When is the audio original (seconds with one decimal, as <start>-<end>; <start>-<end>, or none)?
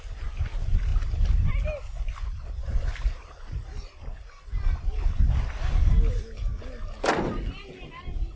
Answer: 0.0-8.4